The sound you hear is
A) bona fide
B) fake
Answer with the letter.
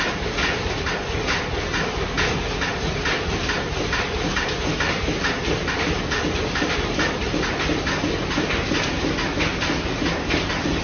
A